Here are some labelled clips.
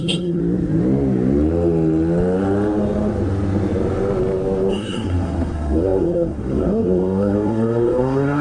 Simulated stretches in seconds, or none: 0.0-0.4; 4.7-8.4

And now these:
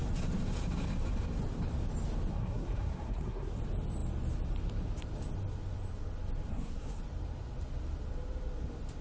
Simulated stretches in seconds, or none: 2.3-3.6; 6.5-7.0

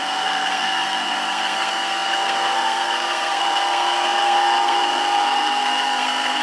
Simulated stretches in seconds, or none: 0.0-6.4

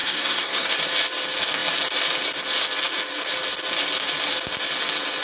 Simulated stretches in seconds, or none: 0.0-0.7

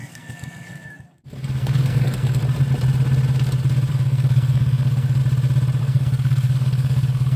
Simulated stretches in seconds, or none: 0.0-2.4; 3.9-5.2; 5.8-7.4

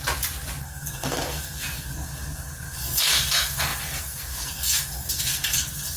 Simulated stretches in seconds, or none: 0.6-6.0

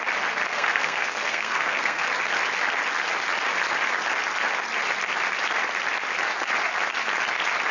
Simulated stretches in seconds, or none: 0.5-2.1

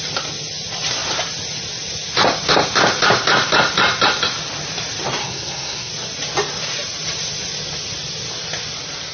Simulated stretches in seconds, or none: 5.2-5.9